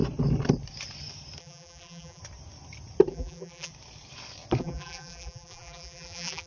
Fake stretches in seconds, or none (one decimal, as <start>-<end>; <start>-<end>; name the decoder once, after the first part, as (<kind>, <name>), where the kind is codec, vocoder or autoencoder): 1.4-2.2 (vocoder, BigVGAN v2); 3.1-3.7; 4.6-6.5